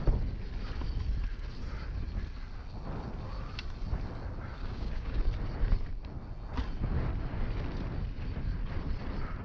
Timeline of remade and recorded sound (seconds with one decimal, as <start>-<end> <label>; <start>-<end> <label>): 0.0-4.6 recorded; 4.6-5.2 remade; 5.2-9.4 recorded